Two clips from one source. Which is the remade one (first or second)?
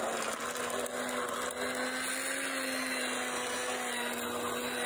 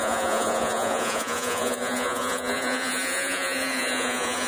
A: second